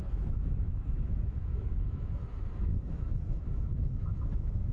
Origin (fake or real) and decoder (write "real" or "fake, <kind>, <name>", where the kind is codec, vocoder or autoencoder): fake, autoencoder, DAC-VAE